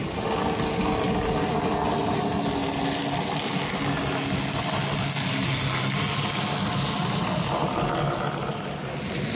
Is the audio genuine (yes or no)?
yes